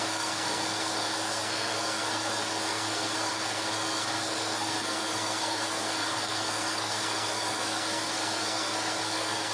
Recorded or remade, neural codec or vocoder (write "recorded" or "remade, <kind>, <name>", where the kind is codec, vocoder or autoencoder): remade, codec, SNAC